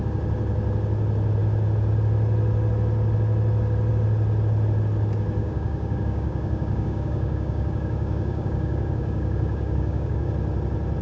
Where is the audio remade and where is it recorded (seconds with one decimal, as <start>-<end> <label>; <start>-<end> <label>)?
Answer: 0.0-5.4 recorded; 5.4-10.3 remade; 10.3-11.0 recorded